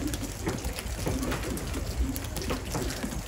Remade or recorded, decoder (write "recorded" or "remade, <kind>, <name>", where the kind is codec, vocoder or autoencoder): recorded